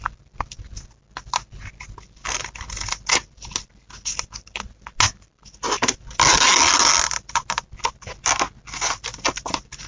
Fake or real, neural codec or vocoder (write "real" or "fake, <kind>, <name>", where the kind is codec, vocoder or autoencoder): real